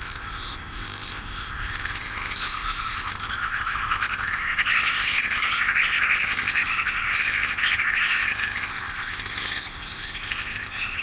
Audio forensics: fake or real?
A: fake